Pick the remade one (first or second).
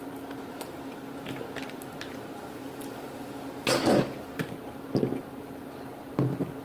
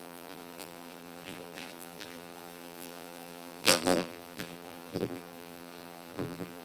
second